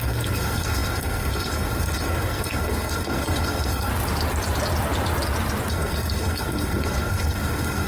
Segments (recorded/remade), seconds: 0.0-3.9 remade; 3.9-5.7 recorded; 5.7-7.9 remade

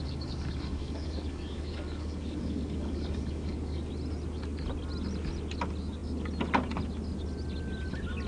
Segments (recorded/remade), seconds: 0.0-3.9 remade; 3.9-8.3 recorded

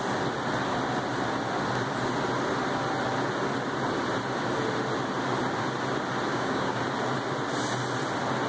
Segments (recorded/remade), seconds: 0.0-6.3 recorded; 6.3-6.8 remade; 6.8-8.5 recorded

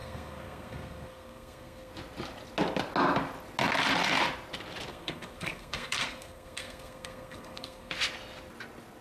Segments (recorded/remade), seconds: 0.0-1.9 remade; 1.9-4.9 recorded; 4.9-7.9 remade; 7.9-9.0 recorded